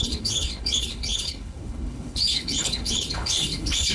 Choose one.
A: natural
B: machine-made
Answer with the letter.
B